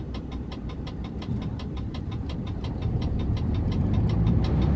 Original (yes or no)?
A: no